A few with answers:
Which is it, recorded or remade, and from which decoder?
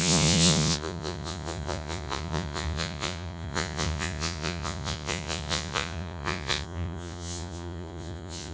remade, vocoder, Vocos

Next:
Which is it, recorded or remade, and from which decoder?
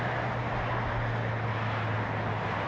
recorded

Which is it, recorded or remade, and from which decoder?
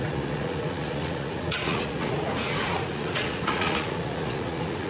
remade, vocoder, Vocos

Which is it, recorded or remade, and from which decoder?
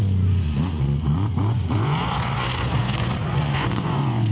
remade, vocoder, Vocos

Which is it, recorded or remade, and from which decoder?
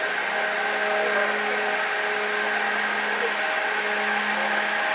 recorded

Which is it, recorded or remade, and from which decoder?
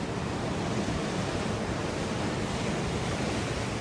recorded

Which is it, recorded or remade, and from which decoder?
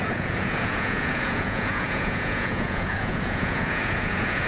remade, vocoder, Vocos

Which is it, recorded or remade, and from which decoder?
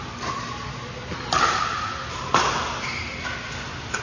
recorded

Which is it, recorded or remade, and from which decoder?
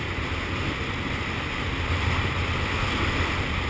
recorded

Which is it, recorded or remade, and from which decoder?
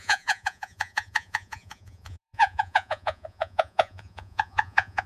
remade, vocoder, Vocos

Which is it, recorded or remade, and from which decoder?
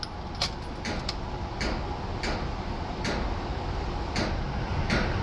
recorded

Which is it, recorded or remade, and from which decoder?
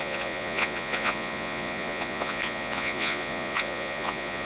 remade, vocoder, Vocos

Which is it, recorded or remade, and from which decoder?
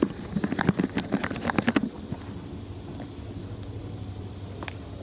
recorded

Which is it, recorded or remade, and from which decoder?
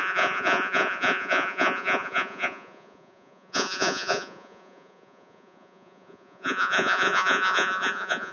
remade, vocoder, Vocos